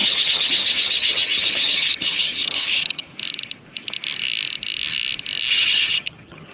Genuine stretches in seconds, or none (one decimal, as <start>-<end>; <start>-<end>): 3.1-5.5